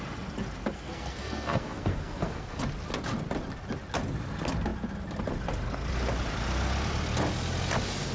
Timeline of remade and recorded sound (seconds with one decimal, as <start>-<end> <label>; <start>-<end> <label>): 0.0-0.6 recorded; 0.6-2.6 remade; 2.6-8.1 recorded